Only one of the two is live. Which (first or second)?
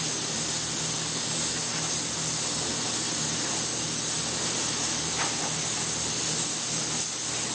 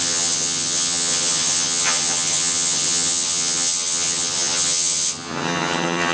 first